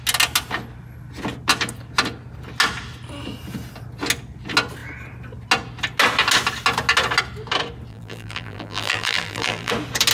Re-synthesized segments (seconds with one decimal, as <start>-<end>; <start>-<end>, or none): 7.9-9.7